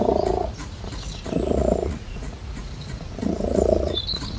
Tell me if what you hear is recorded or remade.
remade